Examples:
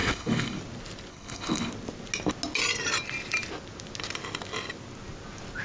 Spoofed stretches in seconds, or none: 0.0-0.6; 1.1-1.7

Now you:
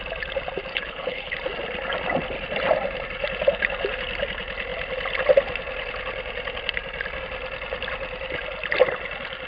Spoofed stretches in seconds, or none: 0.7-1.3

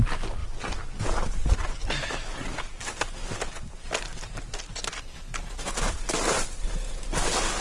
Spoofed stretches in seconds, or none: none

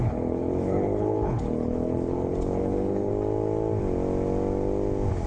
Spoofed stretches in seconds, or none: 0.0-3.1

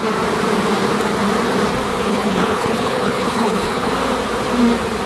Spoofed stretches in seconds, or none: 2.1-3.9

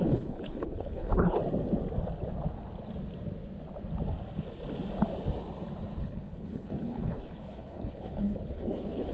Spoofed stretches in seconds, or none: 0.0-1.4; 6.0-9.1